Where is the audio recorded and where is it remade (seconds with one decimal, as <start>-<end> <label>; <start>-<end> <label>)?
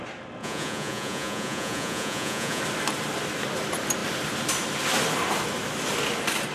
0.0-0.4 recorded; 0.4-2.6 remade; 2.6-6.5 recorded